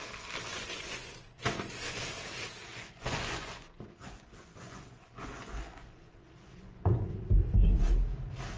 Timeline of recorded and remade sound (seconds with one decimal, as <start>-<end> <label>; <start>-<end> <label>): 0.0-0.5 recorded; 0.5-2.0 remade; 2.0-2.7 recorded; 2.7-7.1 remade; 7.1-8.6 recorded